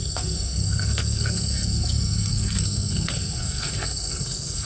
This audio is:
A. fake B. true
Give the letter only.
A